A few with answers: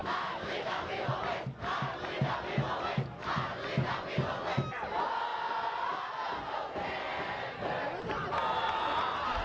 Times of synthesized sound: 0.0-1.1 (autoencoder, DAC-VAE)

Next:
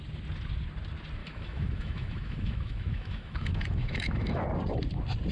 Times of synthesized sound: 1.2-4.4 (autoencoder, DAC-VAE)

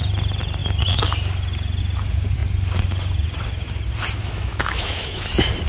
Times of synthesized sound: 4.2-5.2 (autoencoder, DAC-VAE)

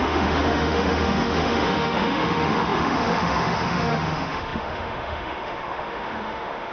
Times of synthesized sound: 0.0-6.7 (autoencoder, DAC-VAE)

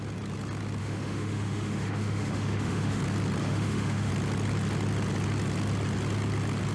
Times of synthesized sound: 0.8-3.0 (autoencoder, DAC-VAE); 3.4-4.1